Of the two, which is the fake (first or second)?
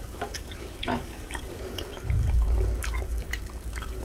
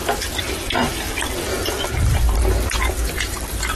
first